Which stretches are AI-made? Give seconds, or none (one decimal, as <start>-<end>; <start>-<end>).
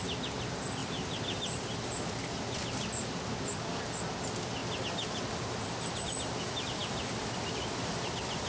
0.8-2.2; 6.8-7.4